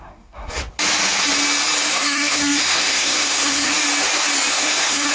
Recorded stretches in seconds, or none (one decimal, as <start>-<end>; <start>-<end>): 0.6-1.9; 3.7-4.5